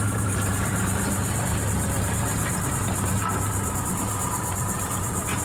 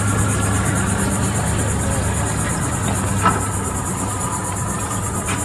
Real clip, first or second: second